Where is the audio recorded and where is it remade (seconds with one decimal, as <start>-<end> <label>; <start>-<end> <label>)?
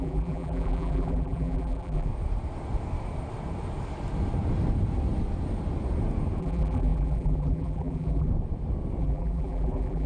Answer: 0.0-2.1 remade; 2.1-6.4 recorded; 6.4-8.3 remade; 8.3-9.0 recorded; 9.0-10.1 remade